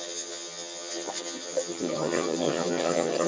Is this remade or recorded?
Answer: remade